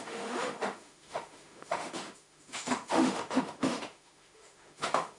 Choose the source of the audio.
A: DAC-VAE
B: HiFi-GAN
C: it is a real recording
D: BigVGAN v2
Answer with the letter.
A